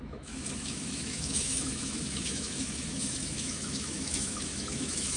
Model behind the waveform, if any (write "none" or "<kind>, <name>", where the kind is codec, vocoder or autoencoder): autoencoder, DAC-VAE